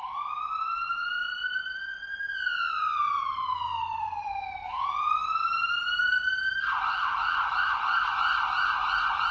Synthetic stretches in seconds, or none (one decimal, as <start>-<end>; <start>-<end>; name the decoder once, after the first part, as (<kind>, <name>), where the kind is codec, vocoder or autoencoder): 5.4-9.3 (vocoder, BigVGAN v2)